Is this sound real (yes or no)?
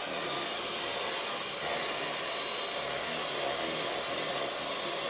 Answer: yes